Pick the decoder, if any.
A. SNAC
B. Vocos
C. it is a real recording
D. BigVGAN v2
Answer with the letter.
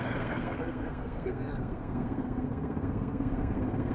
A